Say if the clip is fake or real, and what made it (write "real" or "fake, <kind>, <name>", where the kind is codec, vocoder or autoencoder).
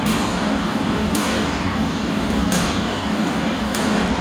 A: fake, codec, DAC